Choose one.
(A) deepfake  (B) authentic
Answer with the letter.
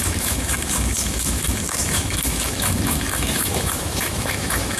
A